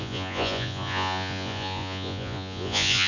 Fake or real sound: fake